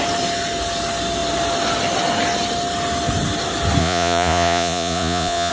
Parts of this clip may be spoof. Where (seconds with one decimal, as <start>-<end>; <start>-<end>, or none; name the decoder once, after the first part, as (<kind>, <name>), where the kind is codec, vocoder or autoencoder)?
3.8-5.5 (vocoder, Vocos)